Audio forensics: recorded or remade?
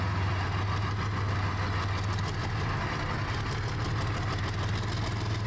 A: recorded